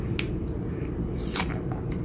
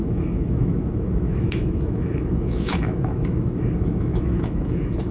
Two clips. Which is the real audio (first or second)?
first